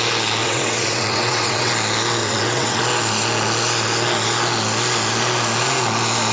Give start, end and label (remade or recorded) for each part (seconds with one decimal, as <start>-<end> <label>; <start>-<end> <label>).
0.0-0.4 recorded; 0.4-1.7 remade; 1.7-2.2 recorded; 2.2-2.8 remade; 2.8-6.3 recorded